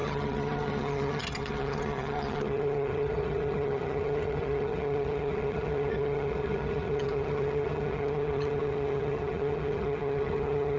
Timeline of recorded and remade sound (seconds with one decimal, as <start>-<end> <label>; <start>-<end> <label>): 0.0-10.8 remade